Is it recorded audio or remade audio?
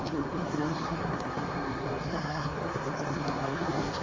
remade